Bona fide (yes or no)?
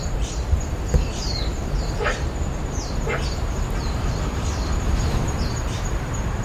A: no